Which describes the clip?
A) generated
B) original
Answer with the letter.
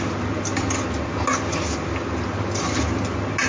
B